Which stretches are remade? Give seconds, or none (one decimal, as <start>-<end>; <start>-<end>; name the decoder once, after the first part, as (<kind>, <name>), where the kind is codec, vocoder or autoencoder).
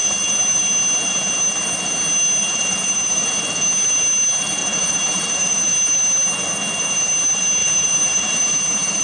0.0-0.6 (vocoder, BigVGAN v2); 2.4-3.3; 4.6-5.7; 7.6-8.4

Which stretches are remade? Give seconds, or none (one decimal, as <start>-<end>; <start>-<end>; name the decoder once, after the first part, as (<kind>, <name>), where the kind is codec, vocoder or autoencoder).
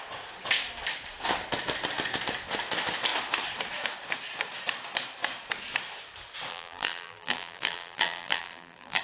6.5-9.0 (vocoder, BigVGAN v2)